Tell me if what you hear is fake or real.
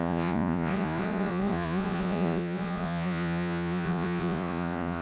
fake